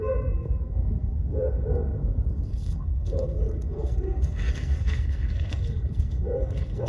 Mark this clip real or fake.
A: fake